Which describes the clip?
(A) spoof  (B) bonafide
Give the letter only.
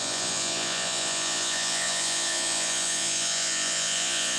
A